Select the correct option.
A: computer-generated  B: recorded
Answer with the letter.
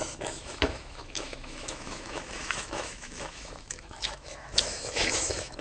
A